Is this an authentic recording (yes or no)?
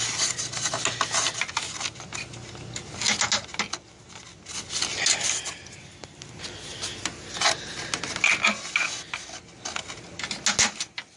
yes